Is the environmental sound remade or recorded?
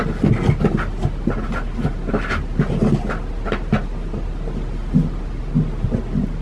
recorded